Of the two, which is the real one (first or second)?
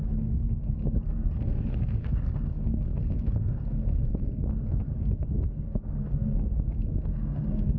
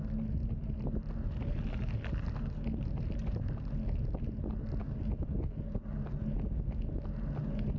second